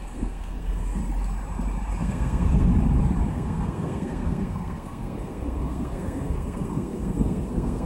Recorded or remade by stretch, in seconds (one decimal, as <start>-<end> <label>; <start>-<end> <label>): 0.0-1.0 remade; 1.0-2.0 recorded; 2.0-2.7 remade; 2.7-3.3 recorded; 3.3-7.9 remade